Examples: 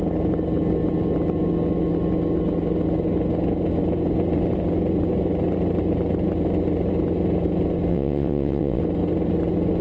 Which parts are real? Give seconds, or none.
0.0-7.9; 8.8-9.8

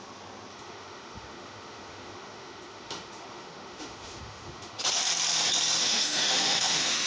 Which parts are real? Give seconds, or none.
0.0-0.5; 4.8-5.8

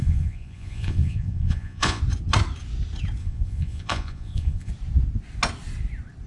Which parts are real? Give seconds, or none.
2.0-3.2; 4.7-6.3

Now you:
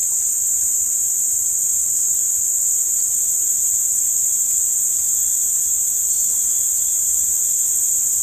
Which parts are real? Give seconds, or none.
4.5-8.2

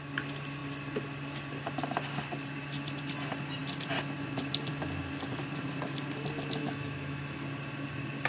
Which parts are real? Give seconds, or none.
0.0-6.6; 7.4-8.3

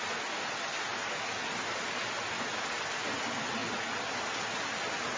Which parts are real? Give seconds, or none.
0.0-5.2

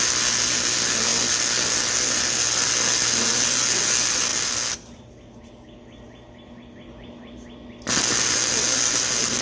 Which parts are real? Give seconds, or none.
0.0-9.4

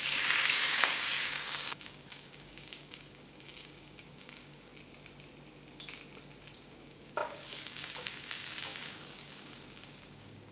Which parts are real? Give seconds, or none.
4.7-6.4